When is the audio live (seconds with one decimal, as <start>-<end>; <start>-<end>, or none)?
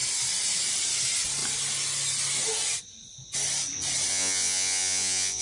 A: 0.0-4.1